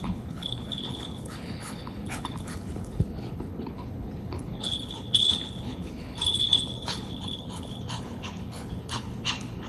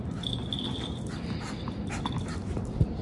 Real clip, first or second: second